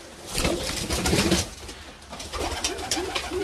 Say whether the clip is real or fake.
real